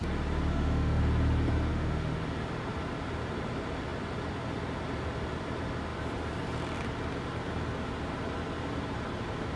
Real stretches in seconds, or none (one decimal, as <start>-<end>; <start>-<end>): 0.0-0.5; 1.0-1.7; 2.2-9.6